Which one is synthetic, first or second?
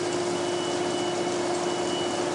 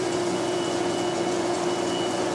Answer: second